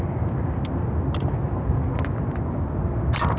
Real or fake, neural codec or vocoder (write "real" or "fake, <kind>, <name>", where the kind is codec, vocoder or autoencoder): real